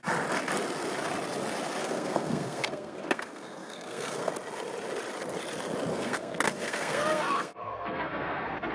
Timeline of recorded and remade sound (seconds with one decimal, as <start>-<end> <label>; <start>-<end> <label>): 0.0-1.8 recorded; 1.8-4.3 remade; 4.3-5.9 recorded; 5.9-8.7 remade